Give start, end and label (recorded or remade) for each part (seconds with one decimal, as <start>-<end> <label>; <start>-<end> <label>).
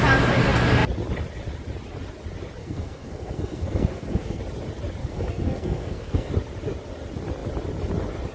0.0-2.6 recorded; 2.6-4.4 remade; 4.4-5.0 recorded; 5.0-6.3 remade; 6.3-8.3 recorded